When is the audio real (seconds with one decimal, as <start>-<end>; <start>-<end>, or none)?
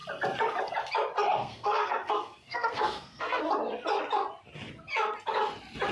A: 0.0-1.4; 3.4-5.9